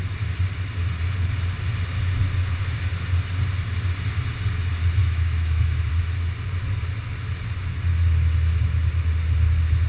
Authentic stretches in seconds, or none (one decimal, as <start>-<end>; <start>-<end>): 0.0-5.0; 5.9-9.9